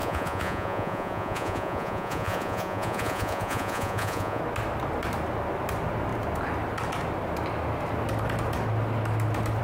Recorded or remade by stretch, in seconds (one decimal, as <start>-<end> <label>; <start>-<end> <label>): 0.0-4.4 remade; 4.4-9.6 recorded